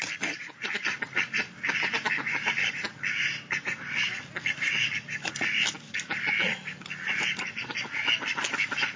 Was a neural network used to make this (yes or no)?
no